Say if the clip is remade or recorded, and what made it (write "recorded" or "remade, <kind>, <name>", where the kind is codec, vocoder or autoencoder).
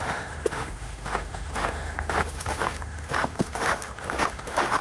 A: remade, autoencoder, DAC-VAE